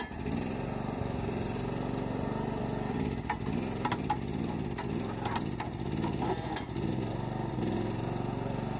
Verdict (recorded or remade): recorded